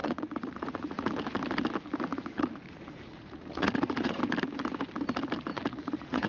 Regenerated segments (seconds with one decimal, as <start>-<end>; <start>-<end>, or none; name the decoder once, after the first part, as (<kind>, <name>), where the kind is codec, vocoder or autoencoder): 0.0-1.1 (vocoder, Vocos); 2.1-4.2; 5.5-6.3